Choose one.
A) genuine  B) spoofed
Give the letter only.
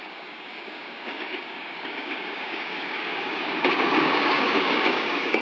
B